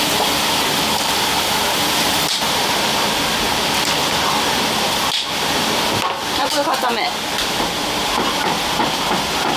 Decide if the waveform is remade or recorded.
remade